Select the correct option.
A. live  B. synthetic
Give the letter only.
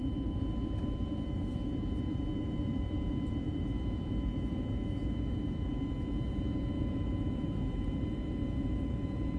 B